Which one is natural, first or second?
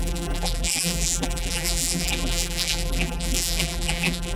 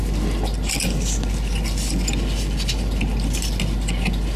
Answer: second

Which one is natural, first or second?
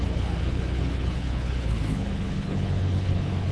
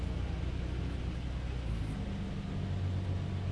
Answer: second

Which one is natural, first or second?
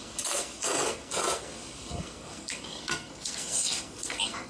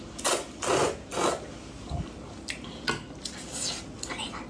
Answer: second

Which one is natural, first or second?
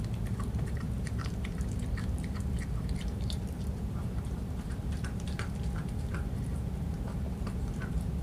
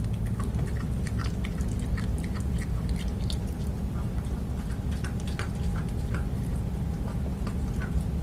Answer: second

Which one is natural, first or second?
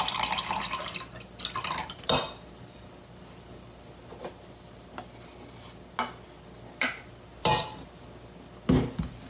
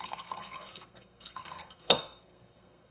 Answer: first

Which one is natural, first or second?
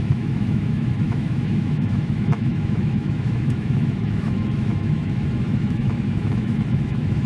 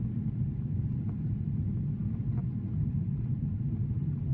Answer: second